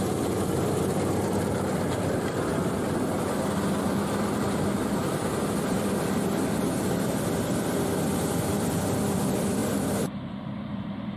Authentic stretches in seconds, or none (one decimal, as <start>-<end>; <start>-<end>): 2.5-3.7